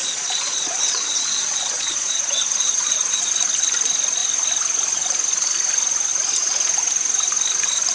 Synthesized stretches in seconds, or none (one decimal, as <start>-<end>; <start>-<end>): 0.0-3.3